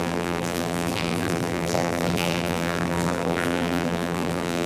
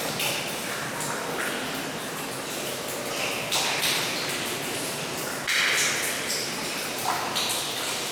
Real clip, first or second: second